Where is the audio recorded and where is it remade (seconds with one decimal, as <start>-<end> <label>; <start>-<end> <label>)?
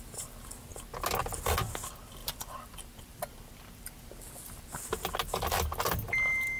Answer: 0.0-2.2 recorded; 2.2-4.0 remade; 4.0-6.6 recorded